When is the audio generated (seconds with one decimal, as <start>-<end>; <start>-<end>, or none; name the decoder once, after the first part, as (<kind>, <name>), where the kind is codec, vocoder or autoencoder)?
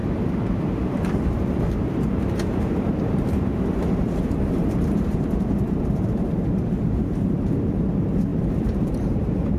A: 0.0-9.6 (vocoder, BigVGAN v2)